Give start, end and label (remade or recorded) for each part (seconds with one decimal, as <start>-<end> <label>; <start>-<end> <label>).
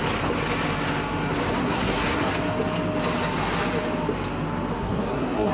0.0-1.6 recorded; 1.6-2.3 remade; 2.3-4.7 recorded; 4.7-5.5 remade